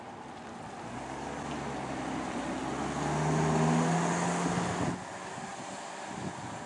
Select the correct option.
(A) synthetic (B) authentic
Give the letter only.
B